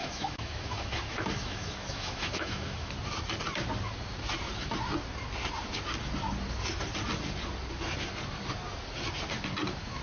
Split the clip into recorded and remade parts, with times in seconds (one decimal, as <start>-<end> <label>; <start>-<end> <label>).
0.0-2.9 remade; 2.9-10.0 recorded